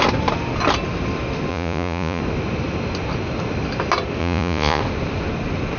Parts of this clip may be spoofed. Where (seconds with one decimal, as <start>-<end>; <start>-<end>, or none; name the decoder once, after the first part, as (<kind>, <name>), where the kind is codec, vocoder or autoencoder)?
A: 1.5-2.2 (vocoder, Vocos); 4.2-4.8